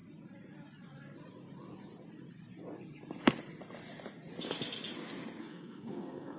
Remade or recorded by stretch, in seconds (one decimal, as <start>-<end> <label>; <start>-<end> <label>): 0.0-5.4 recorded; 5.4-6.4 remade